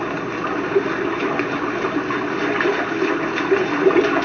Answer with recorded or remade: recorded